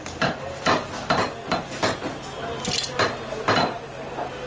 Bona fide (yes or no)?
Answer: yes